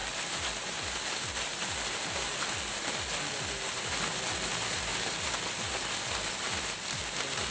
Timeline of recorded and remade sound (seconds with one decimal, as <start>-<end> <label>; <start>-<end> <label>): 0.0-2.0 remade; 2.0-4.9 recorded; 4.9-7.0 remade; 7.0-7.5 recorded